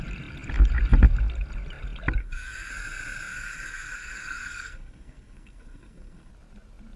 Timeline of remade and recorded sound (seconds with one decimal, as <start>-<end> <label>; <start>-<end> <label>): 0.0-2.2 recorded; 2.2-2.7 remade; 2.7-3.3 recorded; 3.3-6.3 remade; 6.3-7.0 recorded